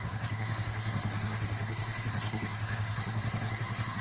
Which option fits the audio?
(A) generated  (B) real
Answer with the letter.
A